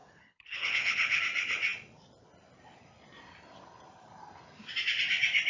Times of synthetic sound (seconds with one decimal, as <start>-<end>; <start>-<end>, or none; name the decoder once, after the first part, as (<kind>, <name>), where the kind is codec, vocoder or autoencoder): 0.0-1.2 (codec, HILCodec)